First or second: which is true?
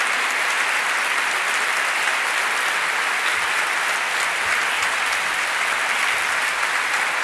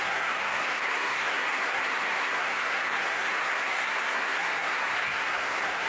first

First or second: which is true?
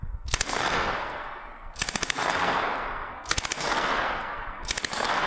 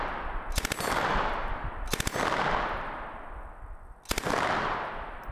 second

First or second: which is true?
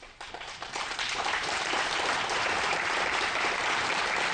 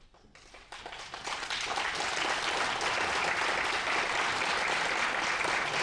second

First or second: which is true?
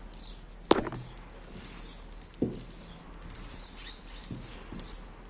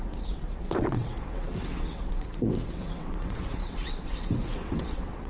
first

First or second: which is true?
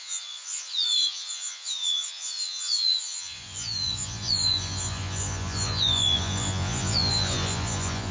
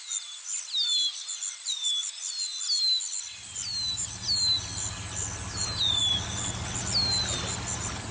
second